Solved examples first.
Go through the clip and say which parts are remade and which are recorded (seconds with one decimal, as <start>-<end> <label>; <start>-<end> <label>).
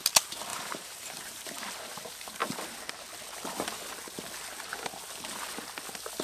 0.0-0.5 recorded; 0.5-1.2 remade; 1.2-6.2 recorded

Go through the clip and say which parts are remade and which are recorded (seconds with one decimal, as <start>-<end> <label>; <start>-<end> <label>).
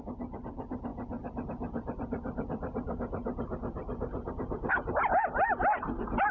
0.0-6.3 recorded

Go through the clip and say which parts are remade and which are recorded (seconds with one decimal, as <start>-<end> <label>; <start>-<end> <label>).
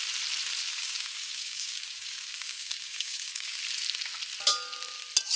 0.0-0.7 recorded; 0.7-3.6 remade; 3.6-5.4 recorded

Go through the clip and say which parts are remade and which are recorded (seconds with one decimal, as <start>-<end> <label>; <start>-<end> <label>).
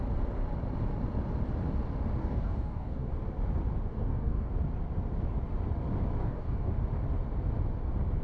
0.0-2.2 recorded; 2.2-3.1 remade; 3.1-3.9 recorded; 3.9-4.5 remade; 4.5-6.2 recorded; 6.2-6.7 remade; 6.7-8.2 recorded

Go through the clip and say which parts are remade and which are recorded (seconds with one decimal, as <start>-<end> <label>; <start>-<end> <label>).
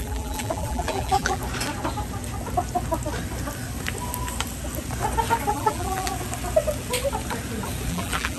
0.0-1.4 remade; 1.4-5.5 recorded; 5.5-6.1 remade; 6.1-7.9 recorded; 7.9-8.4 remade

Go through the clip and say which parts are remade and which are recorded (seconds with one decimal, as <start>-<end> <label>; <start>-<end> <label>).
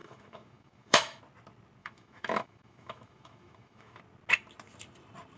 0.0-1.2 remade; 1.2-1.8 recorded; 1.8-4.0 remade; 4.0-5.4 recorded